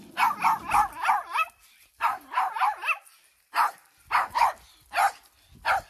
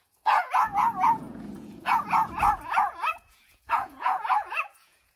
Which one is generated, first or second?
second